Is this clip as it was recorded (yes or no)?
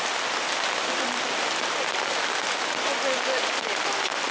yes